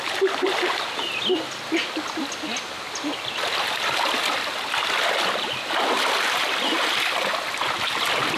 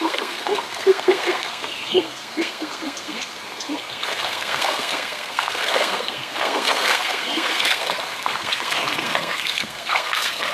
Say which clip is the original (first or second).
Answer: first